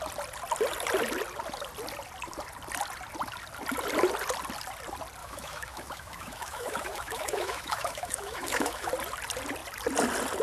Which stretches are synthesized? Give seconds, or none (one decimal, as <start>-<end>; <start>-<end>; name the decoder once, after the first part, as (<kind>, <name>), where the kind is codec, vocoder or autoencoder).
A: 5.2-8.9 (autoencoder, DAC-VAE)